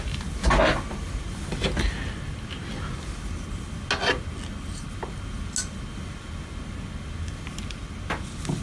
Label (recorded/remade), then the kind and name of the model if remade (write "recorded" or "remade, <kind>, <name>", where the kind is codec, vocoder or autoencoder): recorded